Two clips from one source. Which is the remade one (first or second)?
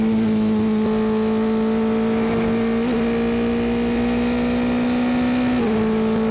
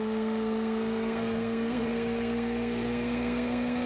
second